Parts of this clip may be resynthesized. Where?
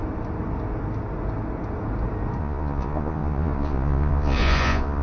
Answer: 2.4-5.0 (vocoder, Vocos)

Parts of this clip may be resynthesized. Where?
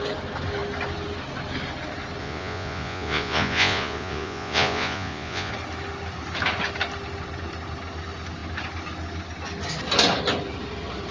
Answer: 2.2-5.5 (vocoder, Vocos)